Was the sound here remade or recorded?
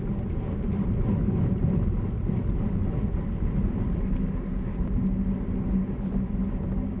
recorded